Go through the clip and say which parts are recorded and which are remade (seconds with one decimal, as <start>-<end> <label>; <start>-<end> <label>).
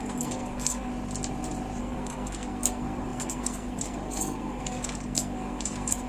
0.0-0.9 remade; 0.9-1.8 recorded; 1.8-6.1 remade